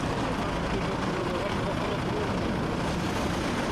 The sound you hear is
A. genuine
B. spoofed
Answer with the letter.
A